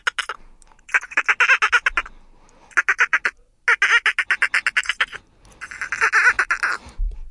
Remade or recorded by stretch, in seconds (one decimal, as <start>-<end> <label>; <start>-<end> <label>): 0.0-7.3 recorded